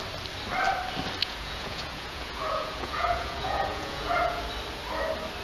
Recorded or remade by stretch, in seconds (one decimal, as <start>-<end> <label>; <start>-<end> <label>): 0.0-1.2 recorded; 1.2-4.4 remade; 4.4-5.4 recorded